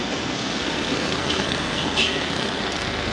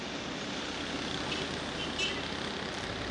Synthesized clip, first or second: first